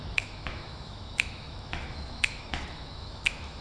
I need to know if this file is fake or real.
fake